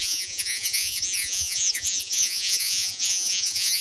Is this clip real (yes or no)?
no